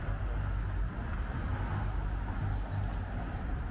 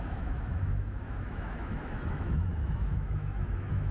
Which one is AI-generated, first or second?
second